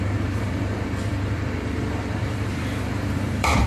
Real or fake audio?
fake